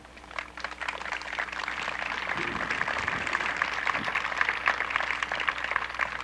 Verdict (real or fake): real